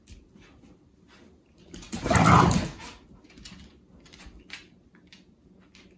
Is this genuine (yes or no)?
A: yes